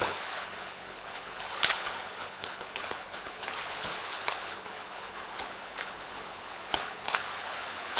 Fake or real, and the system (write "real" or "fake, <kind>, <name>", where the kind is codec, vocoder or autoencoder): fake, codec, HILCodec